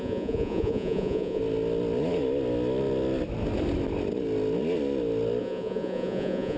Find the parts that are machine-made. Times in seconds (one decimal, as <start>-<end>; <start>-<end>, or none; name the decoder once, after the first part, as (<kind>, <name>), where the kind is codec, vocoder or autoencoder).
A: 0.0-1.4 (vocoder, Vocos); 5.4-6.6